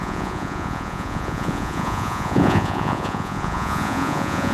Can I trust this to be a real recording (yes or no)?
no